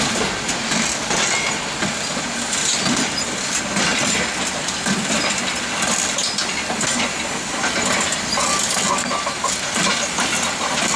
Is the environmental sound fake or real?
real